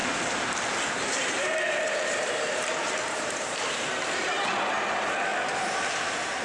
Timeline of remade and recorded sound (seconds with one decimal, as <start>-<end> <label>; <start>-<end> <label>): 0.0-3.7 remade; 3.7-5.3 recorded; 5.3-5.9 remade; 5.9-6.4 recorded